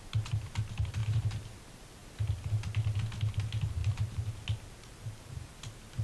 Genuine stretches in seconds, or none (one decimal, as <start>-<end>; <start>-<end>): 0.0-1.0; 1.6-3.8; 4.3-6.0